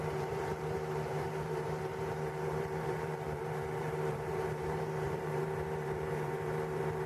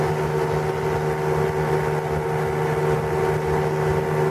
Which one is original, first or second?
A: second